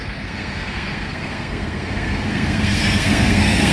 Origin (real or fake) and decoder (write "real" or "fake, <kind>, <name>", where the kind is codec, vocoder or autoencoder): fake, codec, SNAC